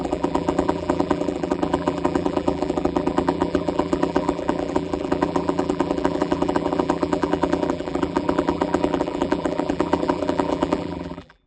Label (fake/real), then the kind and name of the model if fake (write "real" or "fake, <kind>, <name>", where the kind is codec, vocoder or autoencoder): fake, vocoder, BigVGAN v2